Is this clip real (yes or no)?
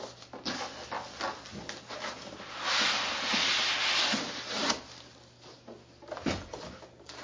yes